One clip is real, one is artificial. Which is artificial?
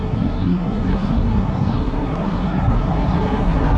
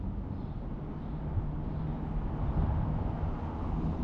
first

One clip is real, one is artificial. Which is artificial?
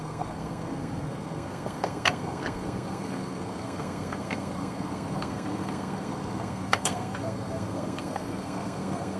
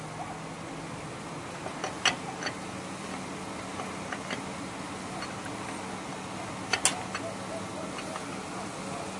first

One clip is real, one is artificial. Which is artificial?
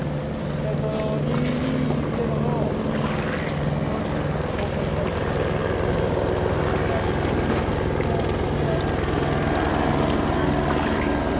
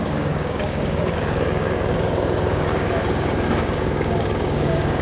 second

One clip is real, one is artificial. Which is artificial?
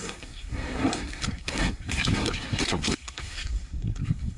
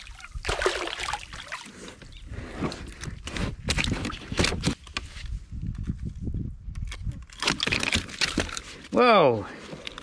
first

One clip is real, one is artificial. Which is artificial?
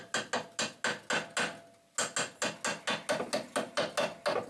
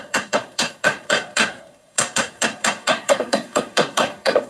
second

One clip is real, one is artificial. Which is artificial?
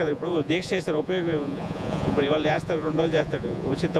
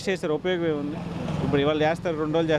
first